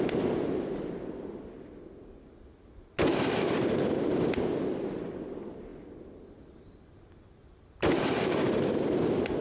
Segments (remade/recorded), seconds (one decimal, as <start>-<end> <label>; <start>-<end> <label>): 0.0-9.4 recorded